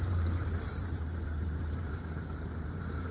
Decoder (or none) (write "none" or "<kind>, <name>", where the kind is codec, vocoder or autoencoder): vocoder, BigVGAN v2